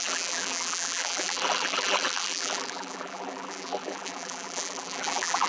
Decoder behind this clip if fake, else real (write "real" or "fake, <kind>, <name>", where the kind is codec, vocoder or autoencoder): fake, vocoder, BigVGAN v2